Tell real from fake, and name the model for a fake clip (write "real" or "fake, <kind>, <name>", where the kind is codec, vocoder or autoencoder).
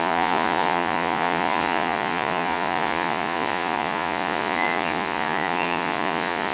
fake, vocoder, Vocos